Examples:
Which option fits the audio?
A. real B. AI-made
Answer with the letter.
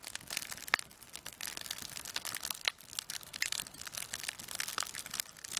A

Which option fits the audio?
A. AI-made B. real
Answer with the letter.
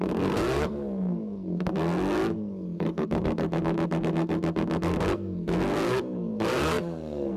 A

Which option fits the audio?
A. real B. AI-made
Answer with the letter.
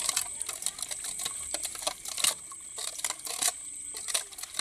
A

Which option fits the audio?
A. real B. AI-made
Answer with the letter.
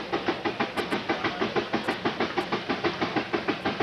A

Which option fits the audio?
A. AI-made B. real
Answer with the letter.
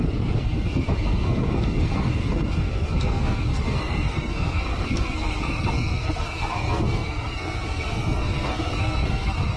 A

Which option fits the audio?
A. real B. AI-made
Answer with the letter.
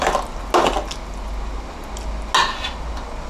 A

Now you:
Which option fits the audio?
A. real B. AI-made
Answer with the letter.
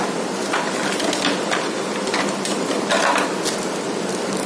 A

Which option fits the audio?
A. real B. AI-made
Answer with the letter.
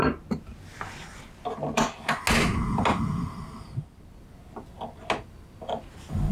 A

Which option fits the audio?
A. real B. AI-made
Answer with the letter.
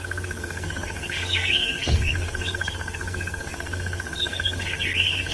B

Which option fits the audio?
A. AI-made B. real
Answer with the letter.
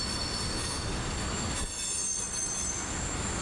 B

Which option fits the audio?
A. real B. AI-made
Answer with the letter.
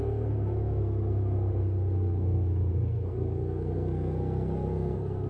B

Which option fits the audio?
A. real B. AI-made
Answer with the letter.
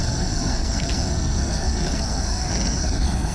B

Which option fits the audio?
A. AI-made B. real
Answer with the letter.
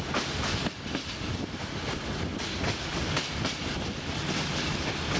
B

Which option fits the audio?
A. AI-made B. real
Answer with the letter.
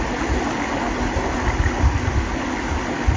B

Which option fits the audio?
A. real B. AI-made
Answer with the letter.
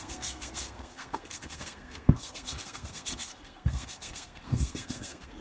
B